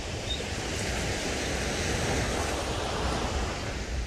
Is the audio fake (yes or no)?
yes